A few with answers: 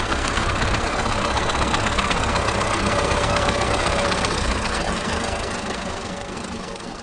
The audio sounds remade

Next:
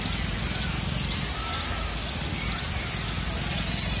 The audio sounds recorded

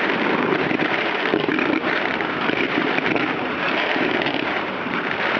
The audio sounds remade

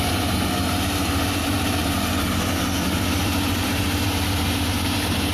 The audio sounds remade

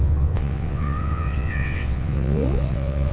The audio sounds remade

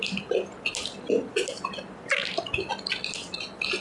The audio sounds recorded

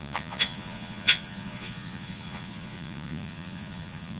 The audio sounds remade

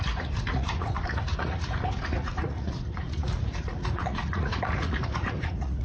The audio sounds remade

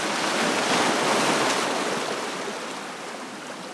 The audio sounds recorded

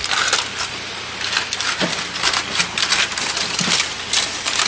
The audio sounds recorded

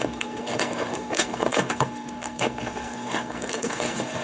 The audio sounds remade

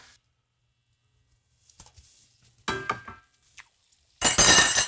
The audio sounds recorded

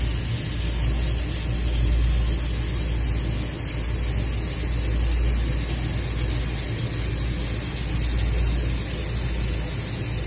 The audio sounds recorded